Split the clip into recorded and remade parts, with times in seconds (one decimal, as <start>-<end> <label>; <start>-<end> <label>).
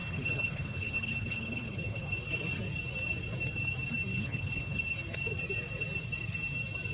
0.0-2.1 remade; 2.1-4.1 recorded; 4.1-4.8 remade; 4.8-6.9 recorded